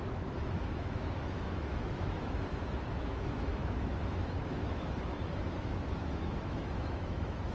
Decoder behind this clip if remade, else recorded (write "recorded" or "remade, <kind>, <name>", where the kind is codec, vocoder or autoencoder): remade, autoencoder, DAC-VAE